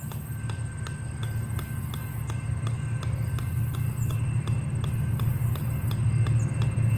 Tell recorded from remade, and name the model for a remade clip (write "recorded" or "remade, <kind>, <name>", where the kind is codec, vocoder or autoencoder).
recorded